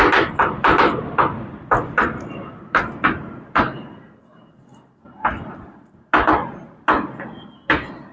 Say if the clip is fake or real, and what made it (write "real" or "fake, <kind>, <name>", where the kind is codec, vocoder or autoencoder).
real